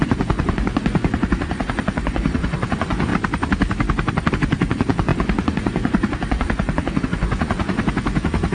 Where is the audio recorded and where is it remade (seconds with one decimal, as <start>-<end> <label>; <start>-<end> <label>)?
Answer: 0.0-3.1 remade; 3.1-4.3 recorded; 4.3-8.5 remade